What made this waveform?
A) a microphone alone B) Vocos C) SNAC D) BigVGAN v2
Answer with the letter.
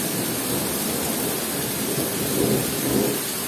A